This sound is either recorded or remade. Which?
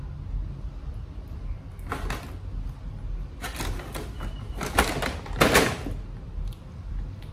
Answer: recorded